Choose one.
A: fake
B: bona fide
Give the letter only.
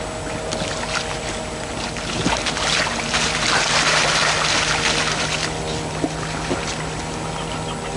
B